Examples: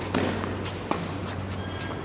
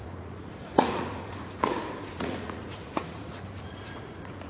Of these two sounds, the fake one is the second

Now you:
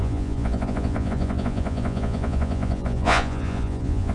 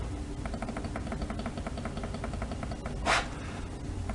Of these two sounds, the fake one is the first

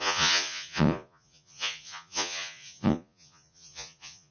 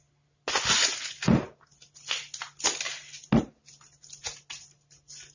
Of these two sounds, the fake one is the first